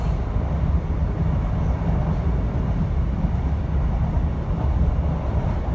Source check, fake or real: real